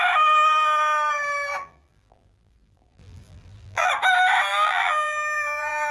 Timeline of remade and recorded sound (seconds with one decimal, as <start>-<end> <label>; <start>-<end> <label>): 0.0-1.6 recorded; 1.6-3.9 remade; 3.9-4.5 recorded; 4.5-5.9 remade